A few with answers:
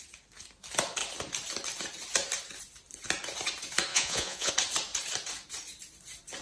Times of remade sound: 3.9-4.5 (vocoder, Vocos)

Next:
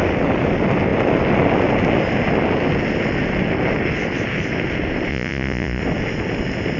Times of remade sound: 5.1-5.8 (vocoder, Vocos)

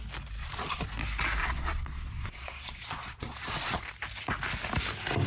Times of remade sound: 0.4-0.9 (vocoder, Vocos); 1.4-3.8

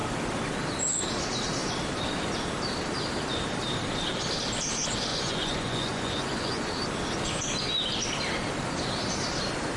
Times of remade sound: 5.1-6.8 (vocoder, Vocos)

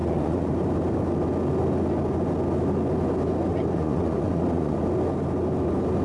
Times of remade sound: 0.0-0.5 (vocoder, Vocos); 3.5-4.8